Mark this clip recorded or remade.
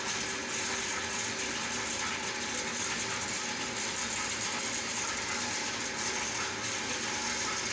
recorded